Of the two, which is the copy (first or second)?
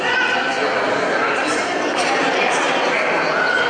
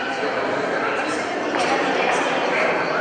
second